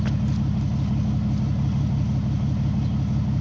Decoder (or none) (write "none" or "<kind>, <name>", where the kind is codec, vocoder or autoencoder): none